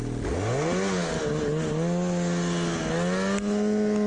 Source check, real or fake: real